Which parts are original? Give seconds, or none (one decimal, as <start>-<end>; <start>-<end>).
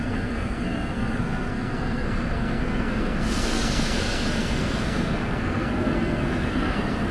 none